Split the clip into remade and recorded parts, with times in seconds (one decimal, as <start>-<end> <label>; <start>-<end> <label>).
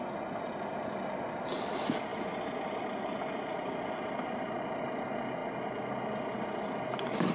0.0-7.3 recorded